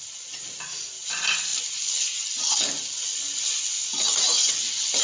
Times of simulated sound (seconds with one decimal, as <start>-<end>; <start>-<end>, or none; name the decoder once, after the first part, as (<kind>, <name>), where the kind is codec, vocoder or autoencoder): none